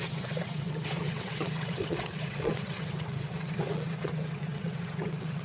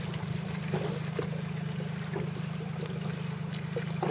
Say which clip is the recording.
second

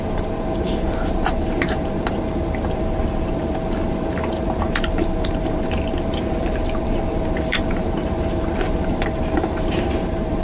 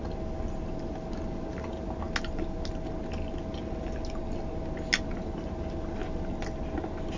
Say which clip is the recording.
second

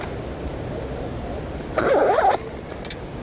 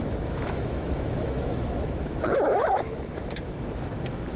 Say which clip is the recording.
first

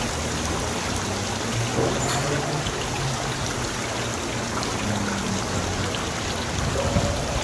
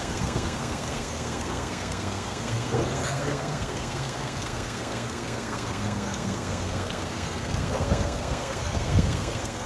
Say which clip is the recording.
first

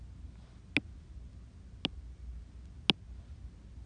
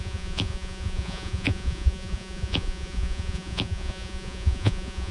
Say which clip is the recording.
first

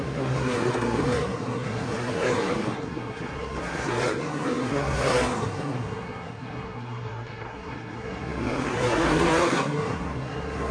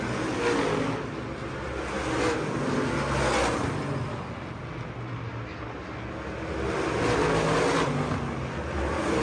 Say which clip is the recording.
second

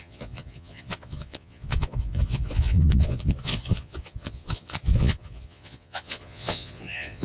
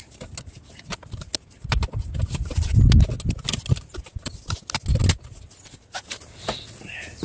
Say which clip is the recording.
second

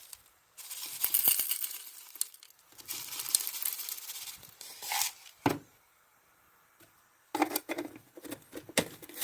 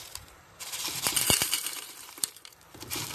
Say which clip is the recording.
first